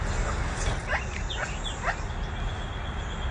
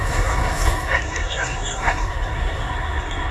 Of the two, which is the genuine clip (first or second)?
first